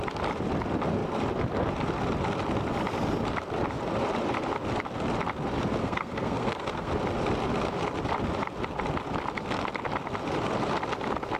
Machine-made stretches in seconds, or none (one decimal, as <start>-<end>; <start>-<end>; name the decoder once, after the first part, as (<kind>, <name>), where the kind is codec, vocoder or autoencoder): 5.8-6.9 (codec, SNAC)

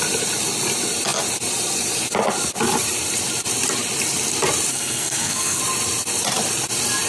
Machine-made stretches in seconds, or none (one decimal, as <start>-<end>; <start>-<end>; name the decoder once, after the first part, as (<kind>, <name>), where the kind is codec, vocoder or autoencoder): 4.7-5.6 (codec, SNAC)